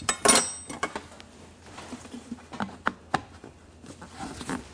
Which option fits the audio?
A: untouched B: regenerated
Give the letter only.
A